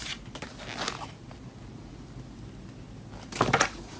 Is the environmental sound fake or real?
real